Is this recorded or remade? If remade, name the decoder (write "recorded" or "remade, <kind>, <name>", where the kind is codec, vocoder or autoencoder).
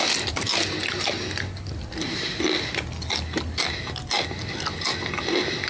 recorded